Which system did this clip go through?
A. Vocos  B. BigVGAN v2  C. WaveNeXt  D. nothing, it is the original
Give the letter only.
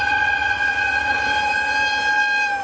D